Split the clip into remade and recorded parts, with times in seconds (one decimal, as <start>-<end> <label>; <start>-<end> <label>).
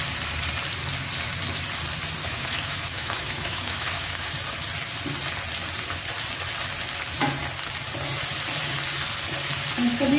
0.0-2.2 recorded; 2.2-4.3 remade; 4.3-10.2 recorded